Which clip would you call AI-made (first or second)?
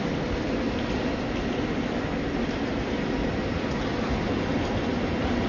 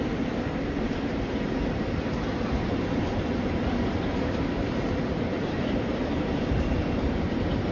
second